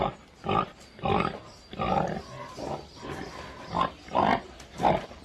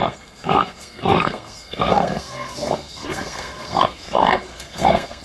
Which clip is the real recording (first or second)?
first